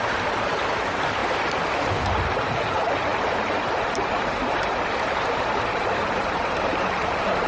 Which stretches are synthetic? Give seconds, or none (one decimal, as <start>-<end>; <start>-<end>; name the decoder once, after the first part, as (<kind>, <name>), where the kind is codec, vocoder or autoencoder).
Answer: 0.0-1.2 (vocoder, BigVGAN v2); 1.8-7.5